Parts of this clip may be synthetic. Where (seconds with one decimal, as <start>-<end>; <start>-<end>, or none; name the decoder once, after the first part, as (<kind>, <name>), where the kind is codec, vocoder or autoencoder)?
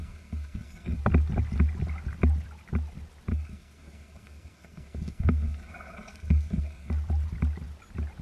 0.0-1.0 (codec, SNAC); 3.3-6.9